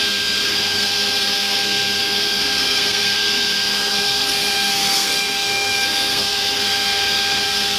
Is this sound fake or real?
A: fake